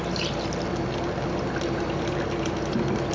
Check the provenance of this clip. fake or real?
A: real